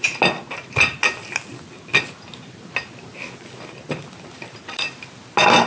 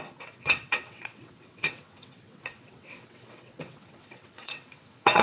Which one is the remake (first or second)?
second